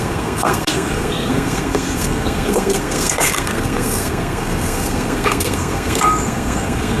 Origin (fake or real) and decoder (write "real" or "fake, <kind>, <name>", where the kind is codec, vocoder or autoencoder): fake, codec, SNAC